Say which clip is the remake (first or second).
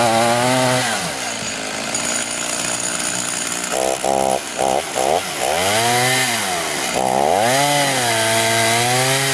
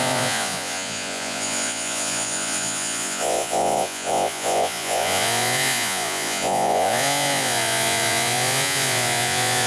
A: second